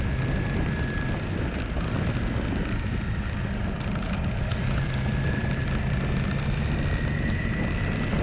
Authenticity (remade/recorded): recorded